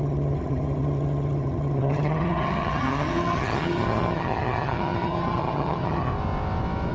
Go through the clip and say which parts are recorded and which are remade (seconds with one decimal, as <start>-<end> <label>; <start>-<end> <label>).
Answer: 0.0-6.1 remade; 6.1-6.9 recorded